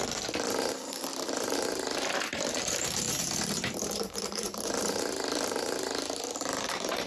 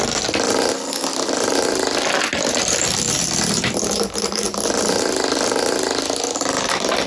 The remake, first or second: first